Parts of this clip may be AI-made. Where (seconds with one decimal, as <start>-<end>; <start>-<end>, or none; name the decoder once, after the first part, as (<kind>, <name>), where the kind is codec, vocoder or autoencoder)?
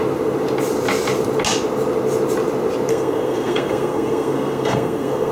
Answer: 2.9-5.3 (codec, SNAC)